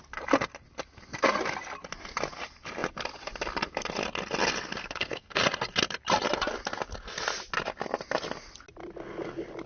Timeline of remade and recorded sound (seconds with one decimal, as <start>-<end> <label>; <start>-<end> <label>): 0.0-4.8 recorded; 4.8-5.4 remade; 5.4-9.7 recorded